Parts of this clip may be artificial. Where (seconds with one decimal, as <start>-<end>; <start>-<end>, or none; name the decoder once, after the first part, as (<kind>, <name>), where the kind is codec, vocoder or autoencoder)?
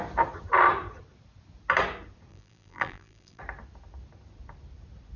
2.3-3.4 (vocoder, BigVGAN v2)